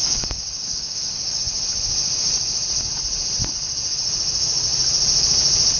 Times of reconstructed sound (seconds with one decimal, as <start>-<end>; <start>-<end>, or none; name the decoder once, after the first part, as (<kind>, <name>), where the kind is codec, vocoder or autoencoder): 0.0-1.4 (codec, DAC)